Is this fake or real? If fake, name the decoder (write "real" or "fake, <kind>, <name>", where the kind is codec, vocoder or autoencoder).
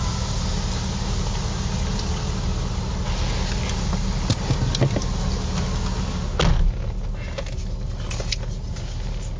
real